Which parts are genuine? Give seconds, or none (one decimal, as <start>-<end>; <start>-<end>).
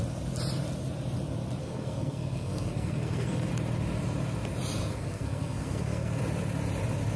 0.0-1.6; 3.5-4.8; 6.2-7.2